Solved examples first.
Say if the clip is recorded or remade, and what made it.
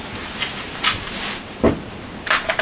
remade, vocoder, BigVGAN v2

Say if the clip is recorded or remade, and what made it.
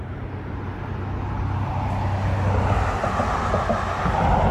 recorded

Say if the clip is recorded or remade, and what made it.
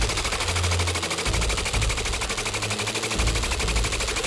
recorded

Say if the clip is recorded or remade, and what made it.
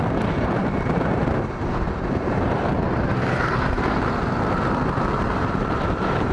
remade, vocoder, BigVGAN v2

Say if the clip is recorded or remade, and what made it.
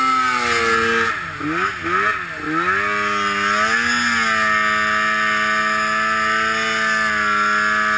recorded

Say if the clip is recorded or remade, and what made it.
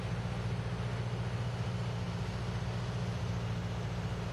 recorded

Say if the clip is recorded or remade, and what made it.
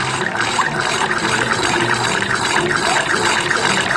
remade, vocoder, BigVGAN v2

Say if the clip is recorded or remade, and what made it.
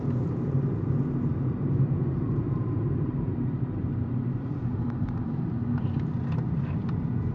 remade, vocoder, BigVGAN v2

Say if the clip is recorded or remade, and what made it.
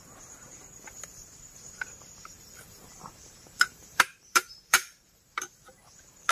remade, vocoder, BigVGAN v2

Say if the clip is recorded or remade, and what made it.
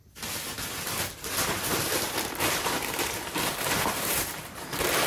remade, vocoder, BigVGAN v2